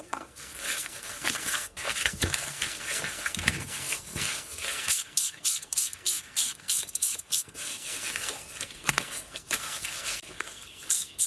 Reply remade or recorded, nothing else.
remade